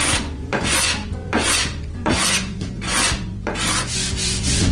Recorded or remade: remade